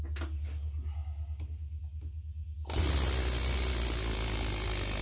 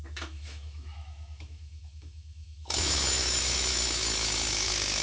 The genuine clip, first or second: first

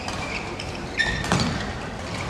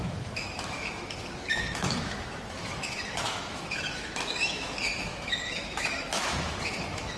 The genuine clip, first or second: first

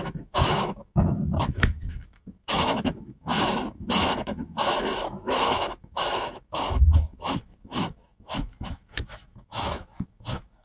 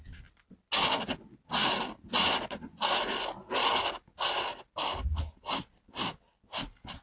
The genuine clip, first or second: second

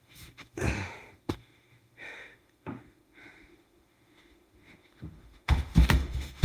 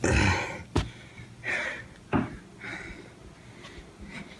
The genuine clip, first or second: second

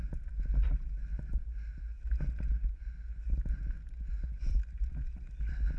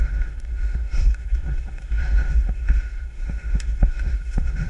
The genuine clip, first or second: first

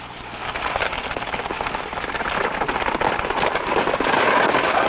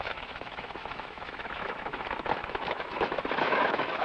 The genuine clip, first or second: first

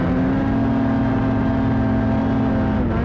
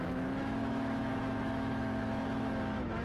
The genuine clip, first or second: first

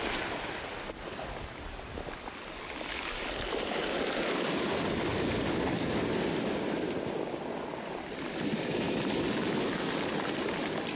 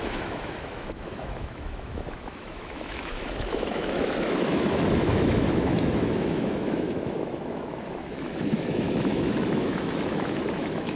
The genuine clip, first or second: first